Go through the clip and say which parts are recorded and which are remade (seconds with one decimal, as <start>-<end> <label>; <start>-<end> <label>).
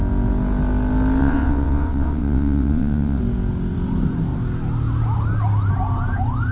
0.0-1.2 recorded; 1.2-3.2 remade; 3.2-6.5 recorded